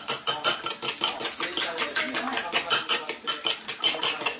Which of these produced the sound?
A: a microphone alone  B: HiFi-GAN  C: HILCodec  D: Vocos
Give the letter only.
A